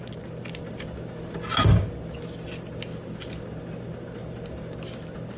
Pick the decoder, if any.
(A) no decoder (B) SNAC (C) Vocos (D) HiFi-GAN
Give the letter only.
A